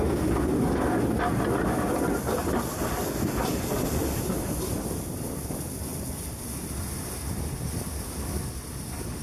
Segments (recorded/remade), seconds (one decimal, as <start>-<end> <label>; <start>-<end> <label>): 0.0-2.4 recorded; 2.4-4.3 remade; 4.3-5.9 recorded; 5.9-6.6 remade; 6.6-9.2 recorded